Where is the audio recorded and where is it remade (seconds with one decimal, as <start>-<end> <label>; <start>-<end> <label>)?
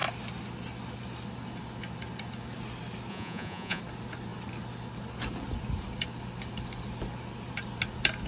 0.0-3.1 recorded; 3.1-3.8 remade; 3.8-8.3 recorded